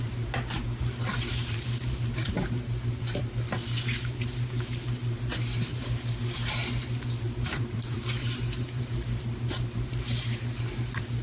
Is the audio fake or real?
fake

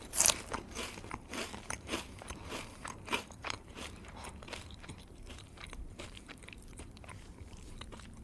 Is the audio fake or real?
fake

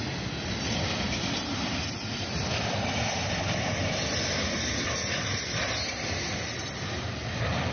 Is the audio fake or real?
fake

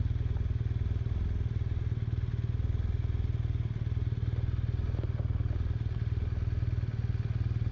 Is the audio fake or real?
real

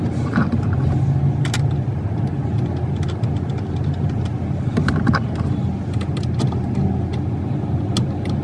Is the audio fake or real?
real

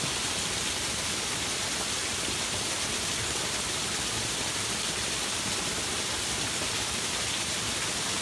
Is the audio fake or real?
fake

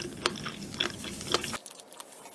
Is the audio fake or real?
real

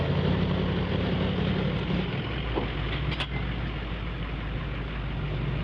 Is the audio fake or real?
real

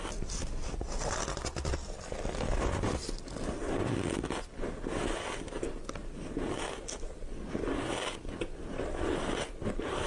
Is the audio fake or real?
real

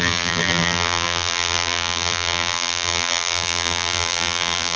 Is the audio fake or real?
fake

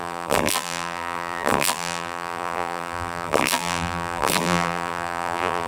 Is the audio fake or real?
fake